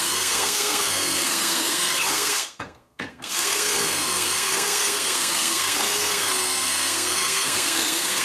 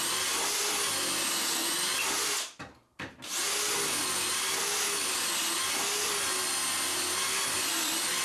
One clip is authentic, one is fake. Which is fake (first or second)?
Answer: first